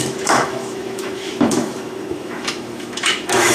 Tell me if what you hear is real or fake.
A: fake